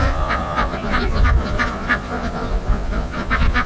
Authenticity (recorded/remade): remade